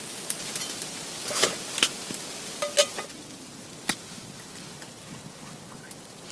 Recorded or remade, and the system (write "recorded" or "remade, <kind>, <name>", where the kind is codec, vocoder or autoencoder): recorded